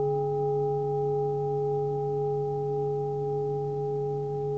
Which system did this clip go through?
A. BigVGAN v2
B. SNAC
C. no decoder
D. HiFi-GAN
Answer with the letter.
C